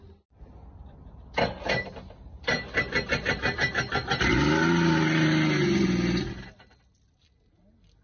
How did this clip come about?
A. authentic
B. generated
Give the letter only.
A